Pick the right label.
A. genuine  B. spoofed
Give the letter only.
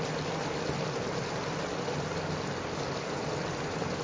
A